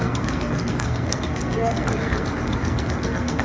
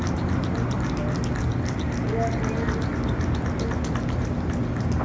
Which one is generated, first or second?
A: first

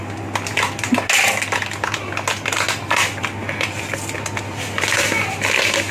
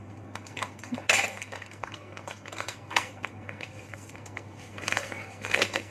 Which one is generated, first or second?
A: second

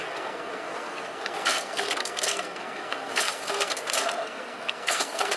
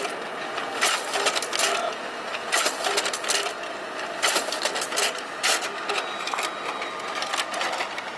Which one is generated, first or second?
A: first